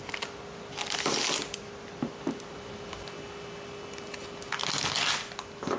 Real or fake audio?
real